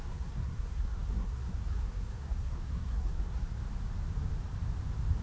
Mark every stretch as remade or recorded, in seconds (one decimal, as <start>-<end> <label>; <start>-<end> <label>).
0.0-3.6 remade; 3.6-5.2 recorded